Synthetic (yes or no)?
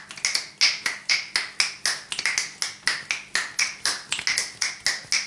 no